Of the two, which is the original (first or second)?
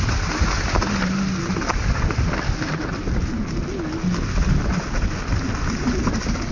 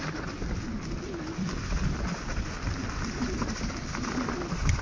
first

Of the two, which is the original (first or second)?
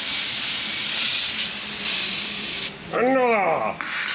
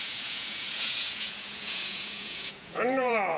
first